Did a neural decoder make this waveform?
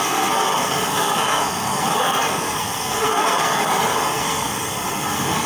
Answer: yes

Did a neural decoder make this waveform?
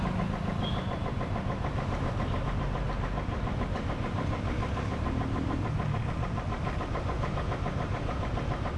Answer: no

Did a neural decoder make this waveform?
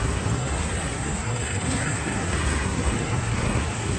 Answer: yes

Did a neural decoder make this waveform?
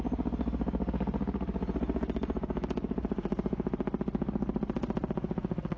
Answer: no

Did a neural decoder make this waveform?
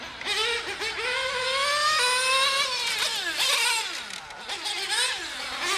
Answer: no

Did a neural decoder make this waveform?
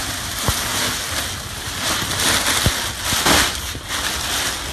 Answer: no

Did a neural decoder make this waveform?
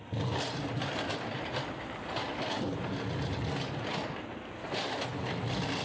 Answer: no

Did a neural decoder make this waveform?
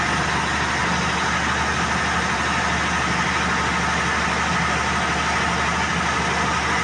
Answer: no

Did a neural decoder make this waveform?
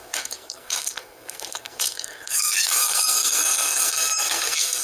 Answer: yes